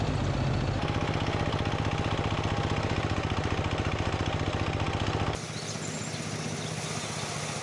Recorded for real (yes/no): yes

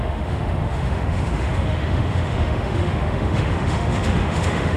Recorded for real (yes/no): no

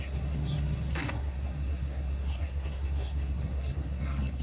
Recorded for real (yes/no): no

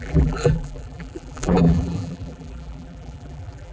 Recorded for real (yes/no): no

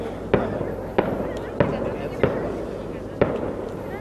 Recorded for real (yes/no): yes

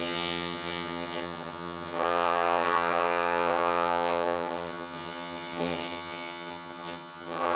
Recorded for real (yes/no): no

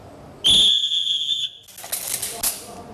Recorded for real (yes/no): yes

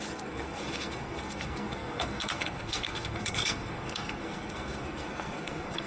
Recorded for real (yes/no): no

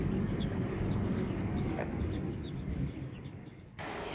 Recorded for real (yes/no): no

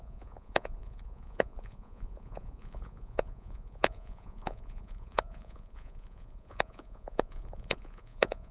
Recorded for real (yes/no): no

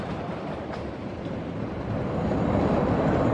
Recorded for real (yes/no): no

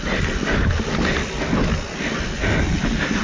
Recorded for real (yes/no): yes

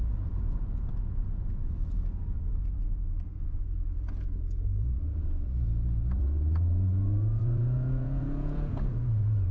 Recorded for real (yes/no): no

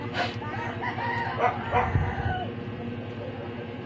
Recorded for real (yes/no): yes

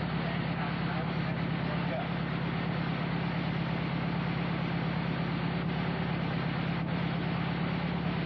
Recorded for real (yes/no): yes